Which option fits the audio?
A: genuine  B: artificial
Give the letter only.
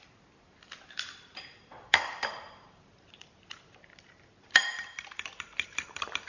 B